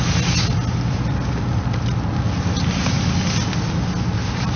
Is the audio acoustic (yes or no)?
yes